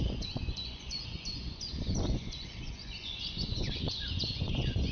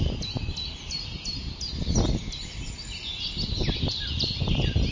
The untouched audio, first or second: second